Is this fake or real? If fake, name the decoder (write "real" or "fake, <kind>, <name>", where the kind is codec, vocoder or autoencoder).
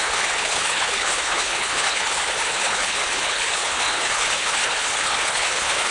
fake, codec, HILCodec